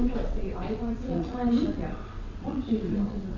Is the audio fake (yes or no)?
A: yes